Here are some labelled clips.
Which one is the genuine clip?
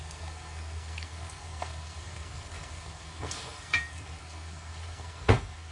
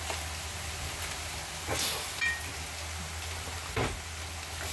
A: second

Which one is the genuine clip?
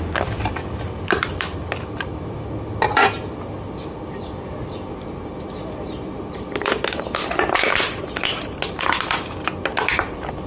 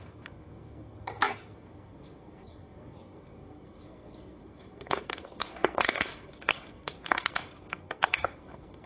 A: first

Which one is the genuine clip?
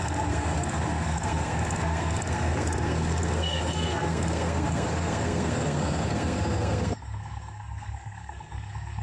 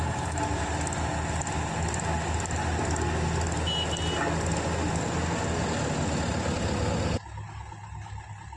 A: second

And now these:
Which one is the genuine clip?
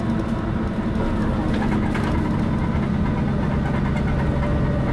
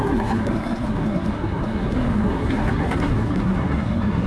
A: first